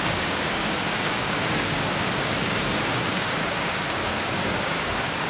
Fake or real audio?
fake